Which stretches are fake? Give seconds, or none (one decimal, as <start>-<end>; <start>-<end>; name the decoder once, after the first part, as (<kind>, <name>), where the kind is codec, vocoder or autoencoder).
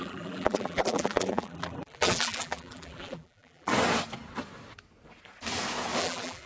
0.0-3.7 (vocoder, BigVGAN v2); 6.0-6.5